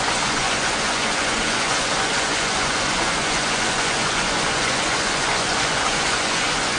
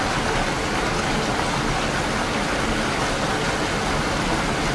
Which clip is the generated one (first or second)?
first